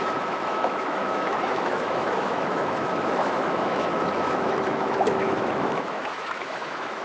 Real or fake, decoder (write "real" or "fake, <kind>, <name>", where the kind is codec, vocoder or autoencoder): fake, autoencoder, DAC-VAE